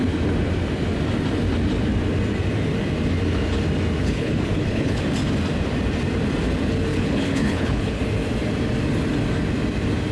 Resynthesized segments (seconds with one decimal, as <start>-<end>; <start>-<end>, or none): 4.0-5.0; 6.9-8.0